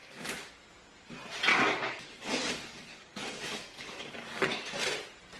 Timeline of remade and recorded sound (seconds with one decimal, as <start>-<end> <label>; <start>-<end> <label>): 0.0-0.5 remade; 0.5-1.5 recorded; 1.5-4.7 remade; 4.7-5.4 recorded